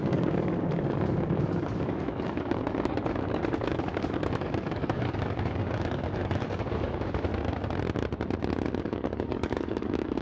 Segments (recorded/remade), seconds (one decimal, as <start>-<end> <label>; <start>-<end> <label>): 0.0-7.3 remade; 7.3-8.8 recorded; 8.8-10.2 remade